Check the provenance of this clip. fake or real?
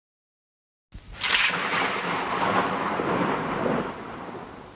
real